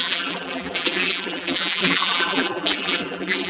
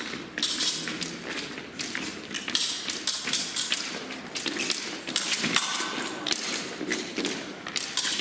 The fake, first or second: first